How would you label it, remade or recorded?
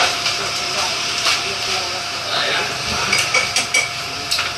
remade